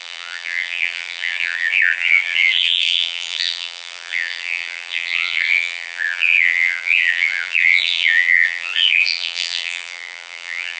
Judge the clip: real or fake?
fake